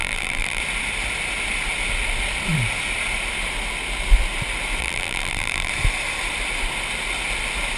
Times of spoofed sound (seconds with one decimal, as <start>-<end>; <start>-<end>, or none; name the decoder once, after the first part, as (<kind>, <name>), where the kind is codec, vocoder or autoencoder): 0.0-0.6 (vocoder, BigVGAN v2); 4.8-5.7